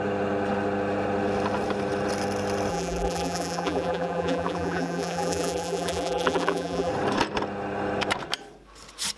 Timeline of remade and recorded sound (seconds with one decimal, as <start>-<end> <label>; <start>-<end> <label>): 0.0-2.7 recorded; 2.7-6.9 remade; 6.9-9.2 recorded